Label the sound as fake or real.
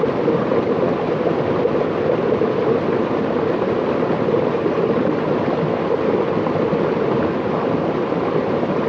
real